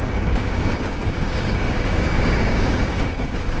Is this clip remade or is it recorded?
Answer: remade